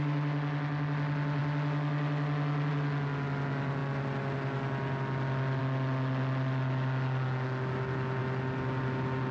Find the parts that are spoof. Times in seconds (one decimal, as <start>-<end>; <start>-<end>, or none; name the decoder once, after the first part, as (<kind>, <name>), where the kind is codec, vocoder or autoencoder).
none